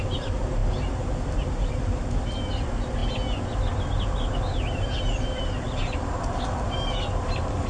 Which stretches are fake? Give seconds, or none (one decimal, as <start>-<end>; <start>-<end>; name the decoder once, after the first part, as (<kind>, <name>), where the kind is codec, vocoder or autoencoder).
none